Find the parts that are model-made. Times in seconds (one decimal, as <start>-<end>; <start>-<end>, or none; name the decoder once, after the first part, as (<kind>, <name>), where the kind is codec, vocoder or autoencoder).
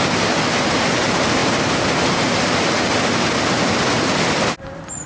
none